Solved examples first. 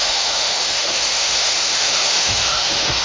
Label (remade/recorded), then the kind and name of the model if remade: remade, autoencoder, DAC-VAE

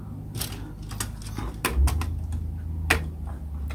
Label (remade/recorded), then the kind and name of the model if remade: recorded